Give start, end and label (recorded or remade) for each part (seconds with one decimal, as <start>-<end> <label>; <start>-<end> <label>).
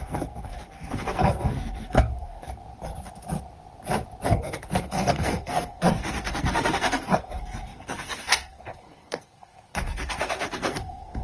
0.0-2.6 remade; 2.6-4.3 recorded; 4.3-11.2 remade